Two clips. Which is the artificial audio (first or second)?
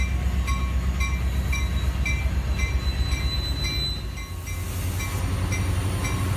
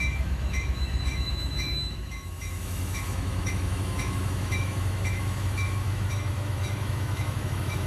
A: second